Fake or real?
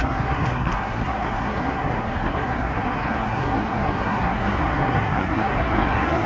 fake